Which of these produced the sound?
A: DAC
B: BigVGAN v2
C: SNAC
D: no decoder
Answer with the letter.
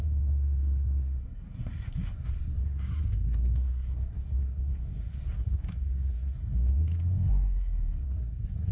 C